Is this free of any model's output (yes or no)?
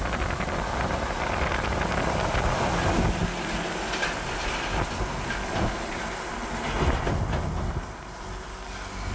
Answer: yes